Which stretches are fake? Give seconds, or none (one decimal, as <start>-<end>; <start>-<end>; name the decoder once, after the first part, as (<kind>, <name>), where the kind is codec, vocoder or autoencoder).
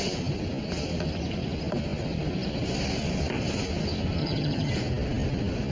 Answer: 4.2-4.7 (vocoder, HiFi-GAN)